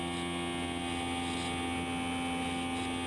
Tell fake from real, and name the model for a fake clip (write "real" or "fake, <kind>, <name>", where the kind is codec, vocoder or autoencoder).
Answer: real